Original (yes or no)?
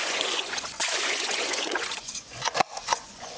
no